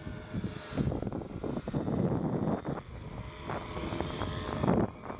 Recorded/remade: recorded